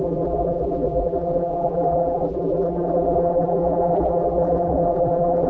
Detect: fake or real fake